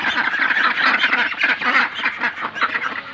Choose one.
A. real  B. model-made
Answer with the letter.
A